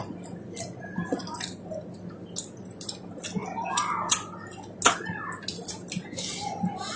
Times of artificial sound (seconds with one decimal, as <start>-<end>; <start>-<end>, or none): none